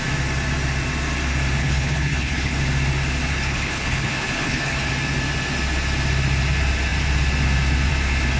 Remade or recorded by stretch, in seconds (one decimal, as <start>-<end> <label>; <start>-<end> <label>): 0.0-1.6 recorded; 1.6-2.6 remade; 2.6-3.3 recorded; 3.3-4.9 remade; 4.9-8.4 recorded